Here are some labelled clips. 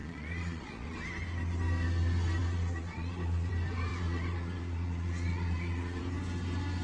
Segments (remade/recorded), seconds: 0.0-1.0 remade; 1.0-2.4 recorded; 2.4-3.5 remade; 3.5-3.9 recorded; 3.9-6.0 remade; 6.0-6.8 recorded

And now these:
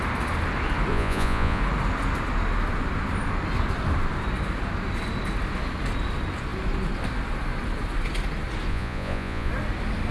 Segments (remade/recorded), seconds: 0.0-0.9 recorded; 0.9-1.6 remade; 1.6-8.7 recorded; 8.7-9.5 remade; 9.5-10.1 recorded

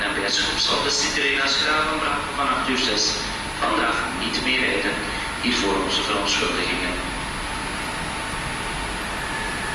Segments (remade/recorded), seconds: 0.0-9.7 recorded

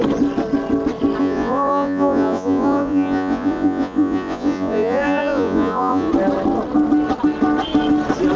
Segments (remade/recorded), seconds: 0.0-1.2 recorded; 1.2-6.1 remade; 6.1-8.4 recorded

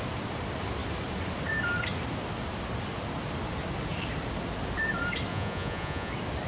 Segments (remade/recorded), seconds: 0.0-5.3 recorded; 5.3-6.1 remade; 6.1-6.5 recorded

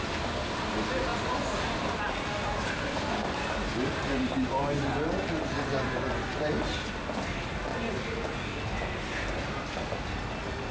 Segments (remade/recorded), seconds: 0.0-10.7 recorded

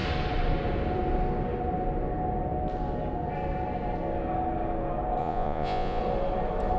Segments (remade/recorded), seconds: 0.0-5.2 recorded; 5.2-6.0 remade; 6.0-6.8 recorded

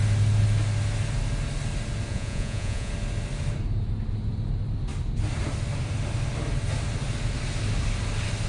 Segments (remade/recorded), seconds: 0.0-2.1 recorded; 2.1-2.9 remade; 2.9-8.5 recorded